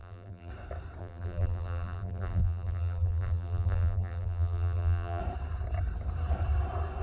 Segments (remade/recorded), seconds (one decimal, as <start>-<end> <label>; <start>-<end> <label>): 0.0-0.5 remade; 0.5-1.0 recorded; 1.0-5.2 remade; 5.2-7.0 recorded